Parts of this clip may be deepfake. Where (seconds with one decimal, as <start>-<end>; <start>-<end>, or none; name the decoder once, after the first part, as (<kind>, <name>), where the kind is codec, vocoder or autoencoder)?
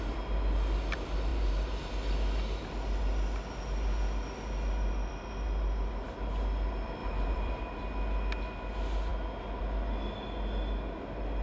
1.3-1.9 (vocoder, BigVGAN v2); 7.0-7.6